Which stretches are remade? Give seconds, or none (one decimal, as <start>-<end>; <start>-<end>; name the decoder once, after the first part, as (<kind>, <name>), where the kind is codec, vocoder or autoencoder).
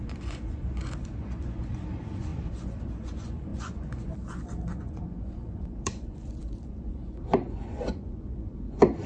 0.0-9.1 (vocoder, Vocos)